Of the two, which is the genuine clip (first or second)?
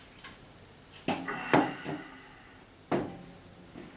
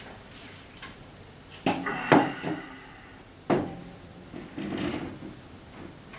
first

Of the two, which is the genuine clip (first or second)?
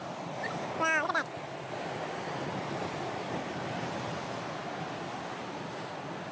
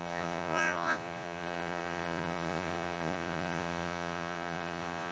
first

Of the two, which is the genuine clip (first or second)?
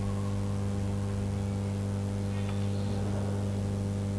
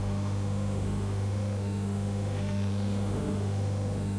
first